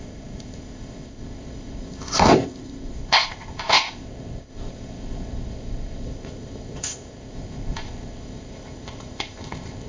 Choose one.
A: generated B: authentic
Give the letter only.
A